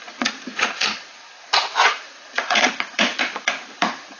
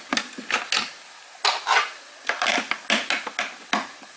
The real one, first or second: second